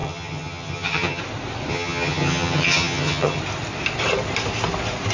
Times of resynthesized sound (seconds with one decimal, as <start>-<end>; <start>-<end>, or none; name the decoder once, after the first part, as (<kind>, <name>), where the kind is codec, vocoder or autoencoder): 0.0-1.2 (vocoder, HiFi-GAN); 1.7-3.4

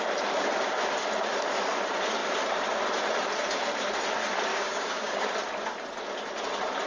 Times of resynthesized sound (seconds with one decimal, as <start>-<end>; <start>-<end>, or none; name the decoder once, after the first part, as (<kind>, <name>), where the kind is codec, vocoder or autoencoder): 4.5-5.3 (codec, DAC)

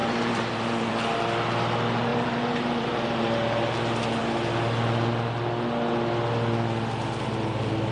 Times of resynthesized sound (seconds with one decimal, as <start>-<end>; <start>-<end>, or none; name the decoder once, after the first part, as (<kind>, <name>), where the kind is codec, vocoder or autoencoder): 0.0-0.9 (vocoder, BigVGAN v2); 2.1-3.2

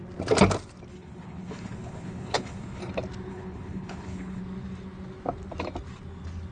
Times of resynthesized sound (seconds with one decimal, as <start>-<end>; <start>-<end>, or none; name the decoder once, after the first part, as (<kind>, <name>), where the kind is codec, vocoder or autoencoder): 0.9-2.8 (codec, HILCodec); 3.3-4.4

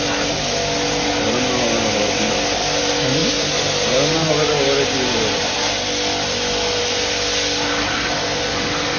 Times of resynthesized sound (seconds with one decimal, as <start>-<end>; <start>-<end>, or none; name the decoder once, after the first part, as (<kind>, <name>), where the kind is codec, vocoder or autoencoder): none

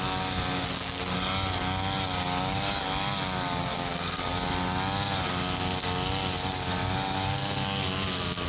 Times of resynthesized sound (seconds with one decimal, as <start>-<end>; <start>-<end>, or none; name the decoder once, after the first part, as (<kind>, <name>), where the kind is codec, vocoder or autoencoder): 3.6-4.2 (codec, SNAC)

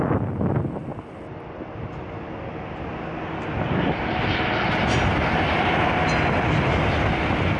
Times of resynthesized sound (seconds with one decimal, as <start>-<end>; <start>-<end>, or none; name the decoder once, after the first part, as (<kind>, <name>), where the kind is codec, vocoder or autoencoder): none

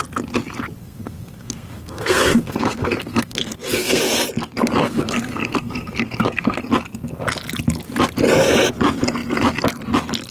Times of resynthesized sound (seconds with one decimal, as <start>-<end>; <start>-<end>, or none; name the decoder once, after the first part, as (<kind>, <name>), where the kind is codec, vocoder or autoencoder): 0.8-4.0 (codec, SNAC); 4.8-6.6